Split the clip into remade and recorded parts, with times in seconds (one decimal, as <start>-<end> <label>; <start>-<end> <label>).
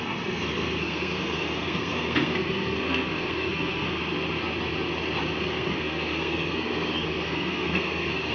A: 0.0-4.0 remade; 4.0-5.4 recorded; 5.4-8.3 remade